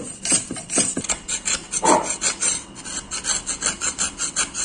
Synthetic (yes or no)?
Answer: no